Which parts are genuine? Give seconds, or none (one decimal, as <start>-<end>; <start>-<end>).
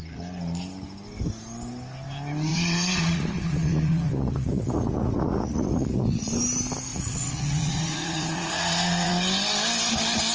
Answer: 0.0-2.5; 6.3-6.9; 9.1-10.3